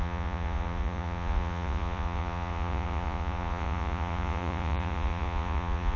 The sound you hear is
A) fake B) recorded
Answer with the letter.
A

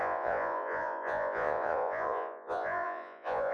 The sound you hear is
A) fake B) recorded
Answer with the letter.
A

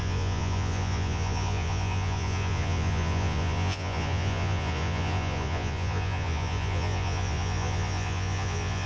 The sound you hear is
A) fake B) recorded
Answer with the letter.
A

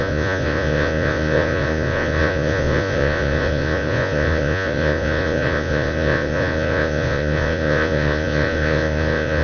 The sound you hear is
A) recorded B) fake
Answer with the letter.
B